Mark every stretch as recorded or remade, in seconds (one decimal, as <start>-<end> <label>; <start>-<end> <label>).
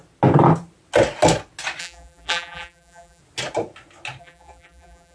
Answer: 0.0-1.8 recorded; 1.8-3.2 remade; 3.2-4.2 recorded; 4.2-5.1 remade